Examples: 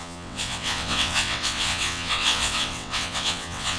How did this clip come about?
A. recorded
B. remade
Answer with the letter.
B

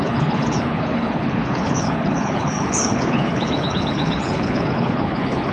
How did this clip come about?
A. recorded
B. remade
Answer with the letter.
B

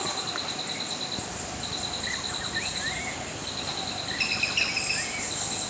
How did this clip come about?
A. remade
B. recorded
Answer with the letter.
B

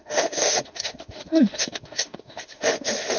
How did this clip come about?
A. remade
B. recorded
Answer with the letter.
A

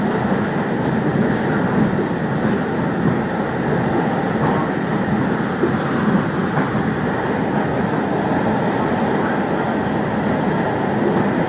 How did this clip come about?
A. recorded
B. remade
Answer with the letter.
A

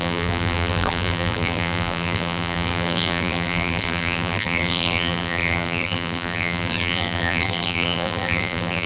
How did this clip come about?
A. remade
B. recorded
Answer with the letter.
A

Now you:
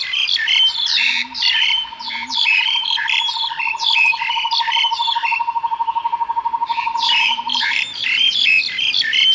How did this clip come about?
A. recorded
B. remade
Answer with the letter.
B